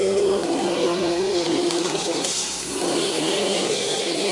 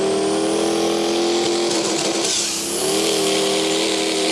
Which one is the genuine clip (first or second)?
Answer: second